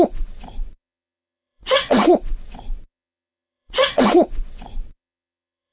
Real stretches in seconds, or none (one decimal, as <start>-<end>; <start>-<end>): none